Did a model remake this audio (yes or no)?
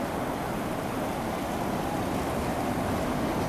no